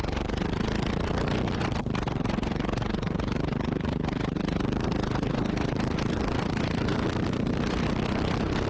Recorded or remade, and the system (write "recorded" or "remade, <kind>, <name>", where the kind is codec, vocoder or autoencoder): recorded